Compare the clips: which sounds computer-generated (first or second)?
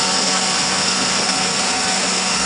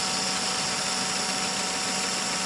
first